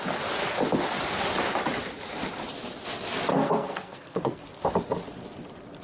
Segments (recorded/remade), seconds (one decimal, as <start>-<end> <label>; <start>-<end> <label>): 0.0-3.3 recorded; 3.3-4.4 remade; 4.4-5.8 recorded